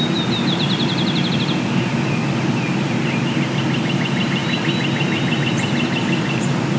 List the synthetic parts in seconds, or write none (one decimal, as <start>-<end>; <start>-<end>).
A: none